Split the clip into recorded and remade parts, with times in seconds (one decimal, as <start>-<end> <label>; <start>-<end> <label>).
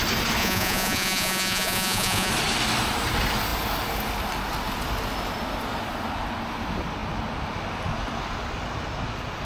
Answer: 0.0-0.4 recorded; 0.4-2.3 remade; 2.3-9.4 recorded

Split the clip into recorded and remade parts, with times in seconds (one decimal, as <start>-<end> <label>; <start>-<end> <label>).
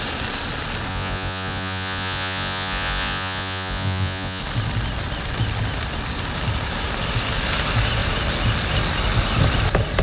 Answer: 0.0-0.9 recorded; 0.9-4.4 remade; 4.4-10.0 recorded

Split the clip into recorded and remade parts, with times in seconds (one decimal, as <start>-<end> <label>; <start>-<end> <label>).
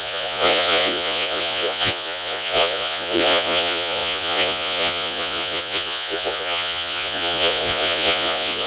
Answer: 0.0-8.7 remade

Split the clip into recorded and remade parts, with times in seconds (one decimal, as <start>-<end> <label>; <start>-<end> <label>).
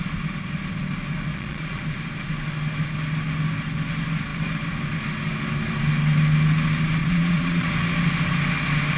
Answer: 0.0-1.3 recorded; 1.3-1.8 remade; 1.8-7.0 recorded; 7.0-7.7 remade; 7.7-9.0 recorded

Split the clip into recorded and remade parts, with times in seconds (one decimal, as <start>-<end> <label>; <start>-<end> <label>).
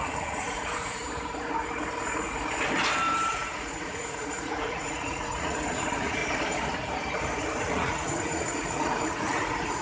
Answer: 0.0-1.0 remade; 1.0-3.3 recorded; 3.3-6.2 remade; 6.2-7.6 recorded; 7.6-9.8 remade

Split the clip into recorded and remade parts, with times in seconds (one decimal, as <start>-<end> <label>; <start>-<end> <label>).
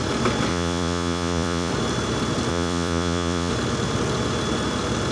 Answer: 0.0-0.5 recorded; 0.5-1.7 remade; 1.7-2.5 recorded; 2.5-3.5 remade; 3.5-5.1 recorded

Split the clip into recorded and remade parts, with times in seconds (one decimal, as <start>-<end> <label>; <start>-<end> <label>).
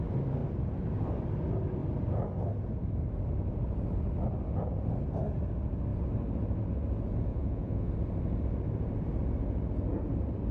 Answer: 0.0-7.3 recorded; 7.3-7.9 remade; 7.9-10.5 recorded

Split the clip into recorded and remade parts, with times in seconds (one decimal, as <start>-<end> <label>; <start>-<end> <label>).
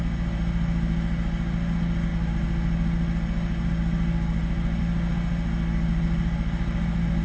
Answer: 0.0-7.2 recorded